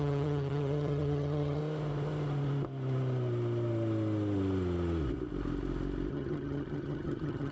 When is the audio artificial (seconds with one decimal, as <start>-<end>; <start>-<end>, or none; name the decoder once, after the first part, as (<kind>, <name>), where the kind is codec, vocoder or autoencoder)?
0.0-1.6 (vocoder, HiFi-GAN); 6.1-7.5